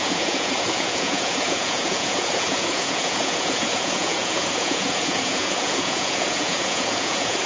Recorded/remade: remade